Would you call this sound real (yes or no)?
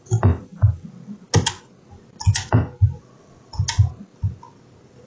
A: yes